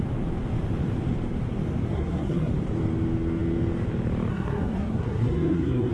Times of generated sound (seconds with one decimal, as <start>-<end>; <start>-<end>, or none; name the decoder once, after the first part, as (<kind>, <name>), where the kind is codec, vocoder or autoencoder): 1.9-2.5 (codec, SNAC); 4.3-5.9

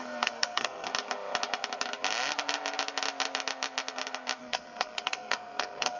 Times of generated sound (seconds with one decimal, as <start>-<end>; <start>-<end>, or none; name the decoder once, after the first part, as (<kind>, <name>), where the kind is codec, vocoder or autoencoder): 0.0-0.9 (codec, SNAC); 4.4-6.0

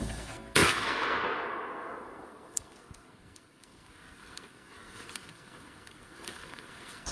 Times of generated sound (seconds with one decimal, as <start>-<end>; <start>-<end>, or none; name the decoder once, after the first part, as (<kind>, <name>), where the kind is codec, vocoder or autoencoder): 0.0-7.1 (codec, SNAC)